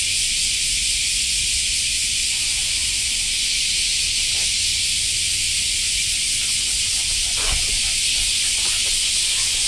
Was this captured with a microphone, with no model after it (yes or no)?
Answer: no